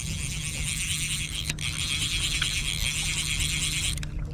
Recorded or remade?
recorded